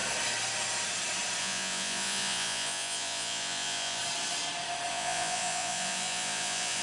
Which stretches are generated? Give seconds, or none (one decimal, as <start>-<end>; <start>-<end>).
1.4-4.0; 4.9-6.8